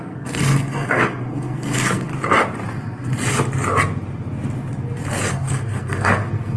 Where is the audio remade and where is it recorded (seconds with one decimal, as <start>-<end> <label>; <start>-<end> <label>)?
0.0-2.1 remade; 2.1-5.3 recorded; 5.3-6.6 remade